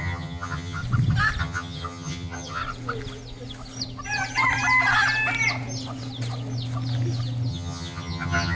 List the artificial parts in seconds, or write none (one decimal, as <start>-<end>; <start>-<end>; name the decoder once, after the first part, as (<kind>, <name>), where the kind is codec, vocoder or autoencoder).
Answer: 0.0-0.8 (vocoder, HiFi-GAN); 1.4-2.6; 7.5-8.5